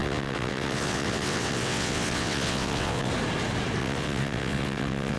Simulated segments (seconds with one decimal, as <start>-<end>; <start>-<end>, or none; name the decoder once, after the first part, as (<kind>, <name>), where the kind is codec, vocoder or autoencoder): 0.0-3.1 (vocoder, WaveNeXt); 3.8-5.2